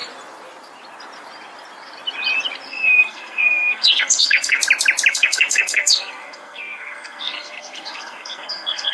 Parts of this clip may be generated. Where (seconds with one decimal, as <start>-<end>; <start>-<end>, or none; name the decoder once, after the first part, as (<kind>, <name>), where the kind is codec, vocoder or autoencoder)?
2.7-4.6 (codec, SNAC); 5.1-8.9